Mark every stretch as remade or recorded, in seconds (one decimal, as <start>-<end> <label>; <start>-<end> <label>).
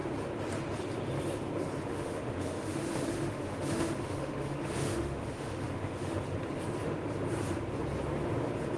0.0-1.9 recorded; 1.9-6.4 remade; 6.4-8.8 recorded